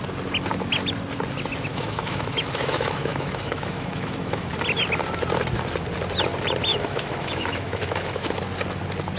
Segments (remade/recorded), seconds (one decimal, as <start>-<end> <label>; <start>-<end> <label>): 0.0-1.7 recorded; 1.7-4.5 remade; 4.5-6.7 recorded; 6.7-8.3 remade; 8.3-9.2 recorded